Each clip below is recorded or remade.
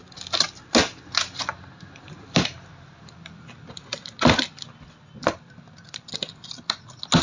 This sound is recorded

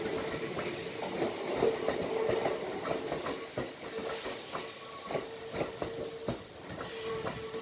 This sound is recorded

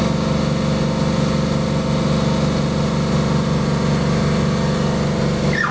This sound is recorded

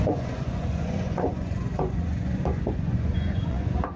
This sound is remade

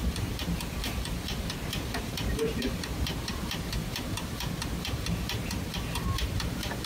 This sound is remade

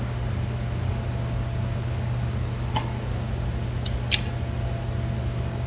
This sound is recorded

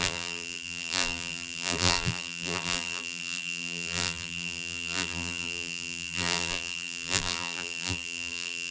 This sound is remade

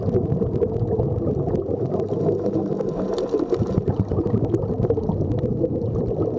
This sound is recorded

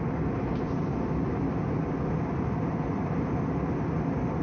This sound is recorded